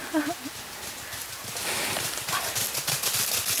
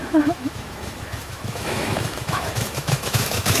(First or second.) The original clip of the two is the first